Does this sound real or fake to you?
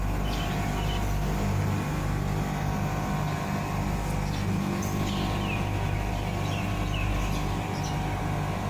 real